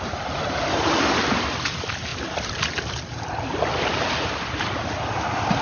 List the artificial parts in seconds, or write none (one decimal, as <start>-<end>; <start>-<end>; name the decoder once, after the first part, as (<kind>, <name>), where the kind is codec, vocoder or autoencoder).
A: none